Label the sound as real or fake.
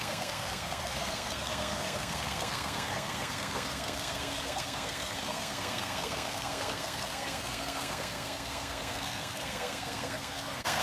fake